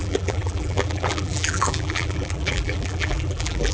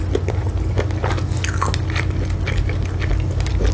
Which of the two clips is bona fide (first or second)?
second